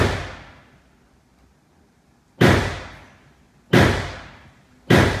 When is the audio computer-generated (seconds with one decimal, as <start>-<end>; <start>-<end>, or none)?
none